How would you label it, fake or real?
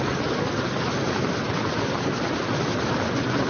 real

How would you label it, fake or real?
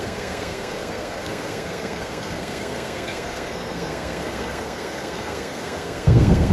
fake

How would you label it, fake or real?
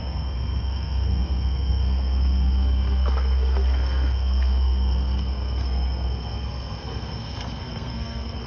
fake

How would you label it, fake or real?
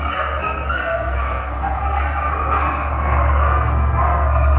fake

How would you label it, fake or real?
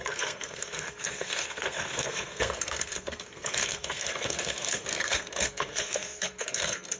fake